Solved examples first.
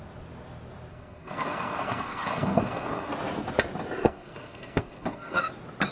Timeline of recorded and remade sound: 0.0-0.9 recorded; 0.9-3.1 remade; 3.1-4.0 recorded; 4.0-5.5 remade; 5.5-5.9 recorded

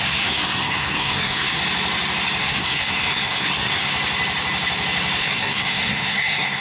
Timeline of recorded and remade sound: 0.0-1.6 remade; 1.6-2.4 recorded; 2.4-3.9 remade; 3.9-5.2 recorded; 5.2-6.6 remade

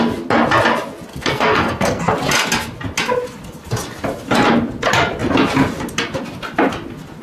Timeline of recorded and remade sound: 0.0-1.1 recorded; 1.1-2.0 remade; 2.0-7.2 recorded